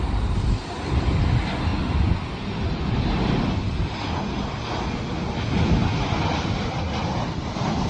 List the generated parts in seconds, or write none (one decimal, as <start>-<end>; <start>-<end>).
none